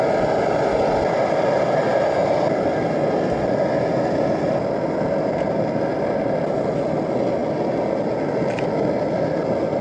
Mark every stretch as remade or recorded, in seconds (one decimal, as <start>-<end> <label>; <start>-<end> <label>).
0.0-9.8 recorded